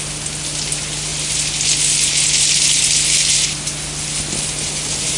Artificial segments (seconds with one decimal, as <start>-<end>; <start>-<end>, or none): none